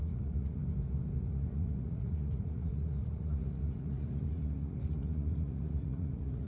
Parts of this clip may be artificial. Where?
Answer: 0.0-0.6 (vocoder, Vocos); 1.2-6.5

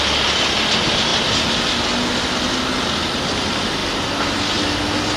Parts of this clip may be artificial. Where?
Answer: 3.8-4.4 (vocoder, BigVGAN v2)

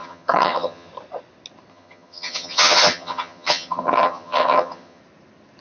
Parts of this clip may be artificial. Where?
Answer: 0.0-0.9 (vocoder, HiFi-GAN); 1.7-5.0

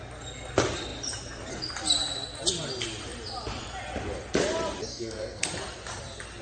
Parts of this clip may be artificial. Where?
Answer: 4.9-5.5 (codec, SNAC)

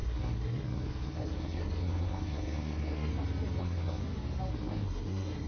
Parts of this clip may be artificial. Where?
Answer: 0.0-3.1 (codec, SNAC); 3.6-4.0; 4.5-5.5

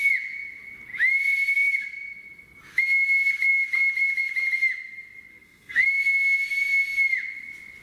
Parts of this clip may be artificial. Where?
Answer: 5.3-6.0 (codec, SNAC)

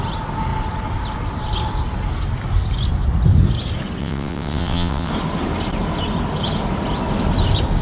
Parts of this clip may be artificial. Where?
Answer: 4.0-5.1 (vocoder, WaveNeXt)

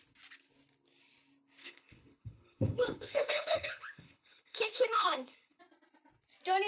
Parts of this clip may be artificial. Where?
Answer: 1.6-5.6 (codec, HILCodec)